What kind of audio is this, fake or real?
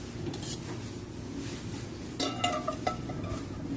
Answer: real